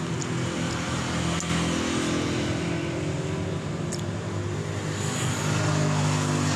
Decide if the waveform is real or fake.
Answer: real